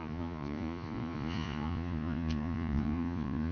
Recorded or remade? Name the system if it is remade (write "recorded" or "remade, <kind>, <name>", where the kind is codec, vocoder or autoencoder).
remade, vocoder, Vocos